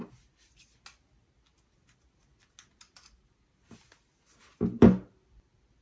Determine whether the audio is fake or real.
real